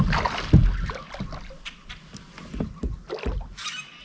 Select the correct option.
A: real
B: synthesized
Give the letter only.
A